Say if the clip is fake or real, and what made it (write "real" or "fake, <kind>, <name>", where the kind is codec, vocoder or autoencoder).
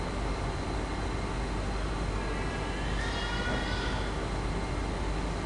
real